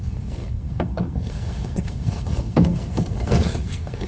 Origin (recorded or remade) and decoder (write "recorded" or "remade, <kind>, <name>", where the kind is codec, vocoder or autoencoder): remade, codec, SNAC